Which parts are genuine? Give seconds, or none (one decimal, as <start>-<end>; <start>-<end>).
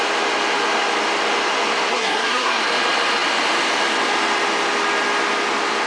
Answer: 0.0-1.9; 2.6-5.9